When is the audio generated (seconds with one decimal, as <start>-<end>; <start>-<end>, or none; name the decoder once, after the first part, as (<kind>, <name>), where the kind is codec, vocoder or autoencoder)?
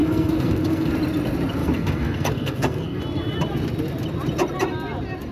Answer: 0.0-0.9 (codec, SNAC); 1.6-3.0